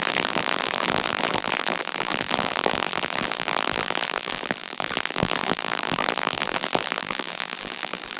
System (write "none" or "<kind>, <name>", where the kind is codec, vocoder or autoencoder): vocoder, BigVGAN v2